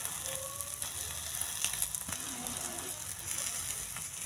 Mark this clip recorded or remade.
recorded